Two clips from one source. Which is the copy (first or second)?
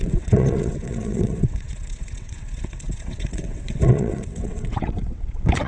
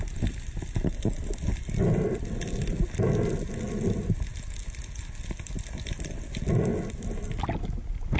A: first